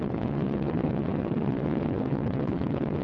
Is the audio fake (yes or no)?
yes